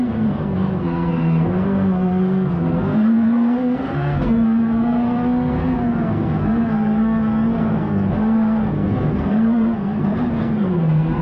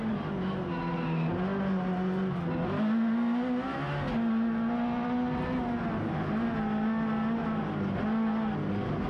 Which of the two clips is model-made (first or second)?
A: first